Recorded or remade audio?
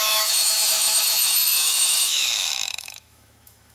remade